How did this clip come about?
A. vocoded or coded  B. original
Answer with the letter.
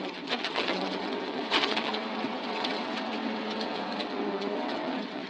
A